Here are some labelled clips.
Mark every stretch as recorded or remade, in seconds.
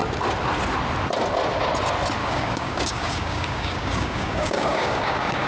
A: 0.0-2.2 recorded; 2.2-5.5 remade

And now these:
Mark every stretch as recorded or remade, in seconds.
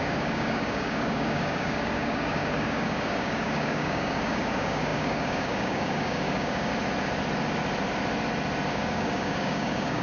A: 0.0-6.7 remade; 6.7-8.7 recorded; 8.7-10.0 remade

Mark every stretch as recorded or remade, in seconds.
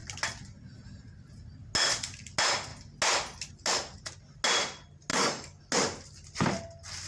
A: 0.0-5.1 recorded; 5.1-5.6 remade; 5.6-7.1 recorded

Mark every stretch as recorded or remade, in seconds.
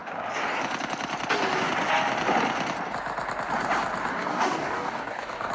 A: 0.0-4.1 recorded; 4.1-5.5 remade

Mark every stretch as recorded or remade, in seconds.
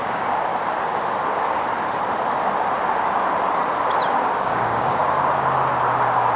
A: 0.0-0.5 remade; 0.5-4.3 recorded; 4.3-5.0 remade; 5.0-5.9 recorded; 5.9-6.4 remade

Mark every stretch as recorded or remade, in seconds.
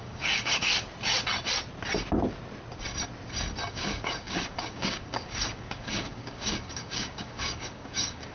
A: 0.0-0.7 remade; 0.7-3.7 recorded; 3.7-8.3 remade